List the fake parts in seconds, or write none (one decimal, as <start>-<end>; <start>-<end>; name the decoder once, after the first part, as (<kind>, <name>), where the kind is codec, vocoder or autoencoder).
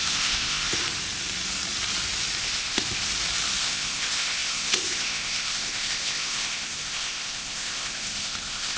0.0-0.8 (codec, ZipCodec); 2.4-3.1; 3.6-8.8